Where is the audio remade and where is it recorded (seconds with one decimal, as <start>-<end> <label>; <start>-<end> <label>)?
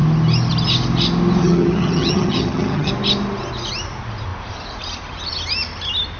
0.0-1.4 recorded; 1.4-2.9 remade; 2.9-6.2 recorded